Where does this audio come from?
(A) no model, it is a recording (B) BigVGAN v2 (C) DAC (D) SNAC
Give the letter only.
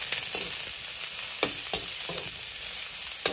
A